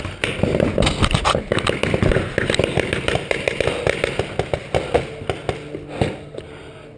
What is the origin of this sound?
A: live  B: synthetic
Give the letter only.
A